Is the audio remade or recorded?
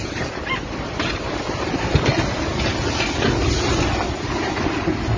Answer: recorded